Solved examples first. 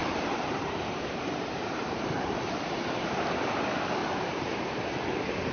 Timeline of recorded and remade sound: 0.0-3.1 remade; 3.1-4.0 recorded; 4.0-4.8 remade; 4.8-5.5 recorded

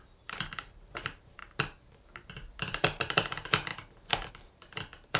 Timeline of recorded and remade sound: 0.0-1.4 remade; 1.4-2.6 recorded; 2.6-5.2 remade

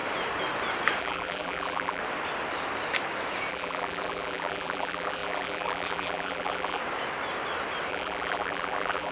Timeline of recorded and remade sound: 0.0-1.0 recorded; 1.0-2.0 remade; 2.0-3.5 recorded; 3.5-6.8 remade; 6.8-7.9 recorded; 7.9-9.1 remade

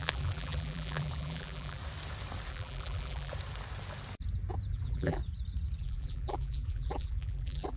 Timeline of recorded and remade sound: 0.0-1.8 remade; 1.8-2.5 recorded; 2.5-3.3 remade; 3.3-4.7 recorded; 4.7-5.2 remade; 5.2-5.8 recorded; 5.8-7.8 remade

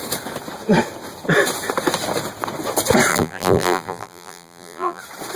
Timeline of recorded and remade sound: 0.0-3.1 recorded; 3.1-5.0 remade; 5.0-5.4 recorded